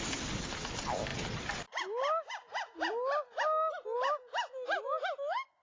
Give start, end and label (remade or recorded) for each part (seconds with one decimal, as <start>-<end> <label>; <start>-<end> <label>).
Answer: 0.0-5.6 recorded